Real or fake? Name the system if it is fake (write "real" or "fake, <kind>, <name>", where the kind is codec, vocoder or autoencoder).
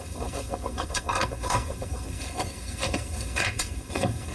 fake, codec, SNAC